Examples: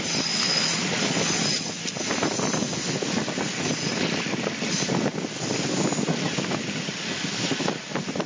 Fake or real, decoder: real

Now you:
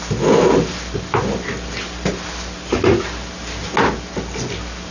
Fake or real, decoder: real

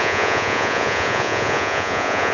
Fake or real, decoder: fake, vocoder, Vocos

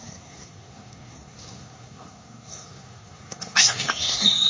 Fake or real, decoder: fake, codec, SNAC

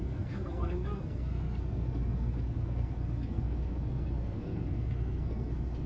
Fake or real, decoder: fake, codec, SNAC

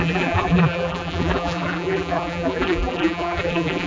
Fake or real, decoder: fake, vocoder, BigVGAN v2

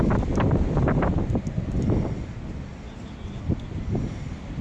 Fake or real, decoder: real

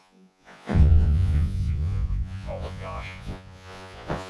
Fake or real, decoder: fake, vocoder, Vocos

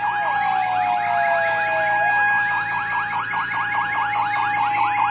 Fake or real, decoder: real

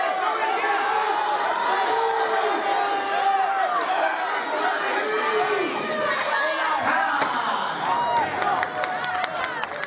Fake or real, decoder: real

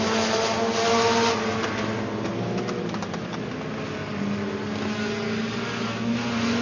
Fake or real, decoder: real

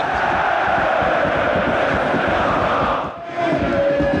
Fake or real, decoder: real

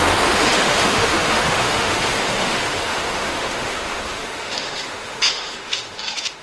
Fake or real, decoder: fake, autoencoder, DAC-VAE